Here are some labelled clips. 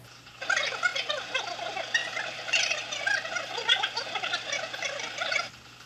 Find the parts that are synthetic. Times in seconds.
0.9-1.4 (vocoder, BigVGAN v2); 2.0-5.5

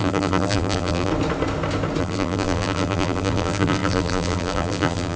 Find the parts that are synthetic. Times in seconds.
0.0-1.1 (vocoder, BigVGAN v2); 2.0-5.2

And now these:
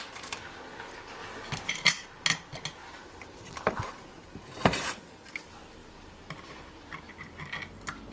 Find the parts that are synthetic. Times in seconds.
2.8-5.0 (vocoder, BigVGAN v2); 5.8-7.0

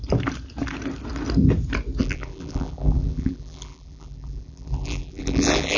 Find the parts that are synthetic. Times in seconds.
2.0-5.8 (vocoder, BigVGAN v2)

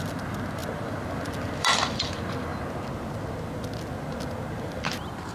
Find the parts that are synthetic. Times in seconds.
0.0-2.5 (vocoder, BigVGAN v2); 4.6-5.3

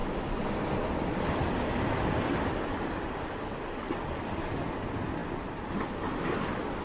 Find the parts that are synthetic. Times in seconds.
none

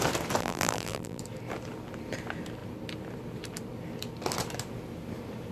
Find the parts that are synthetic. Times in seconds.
0.4-1.2 (vocoder, BigVGAN v2)

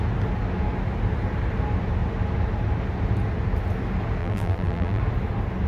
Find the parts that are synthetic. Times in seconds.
4.2-5.0 (vocoder, BigVGAN v2)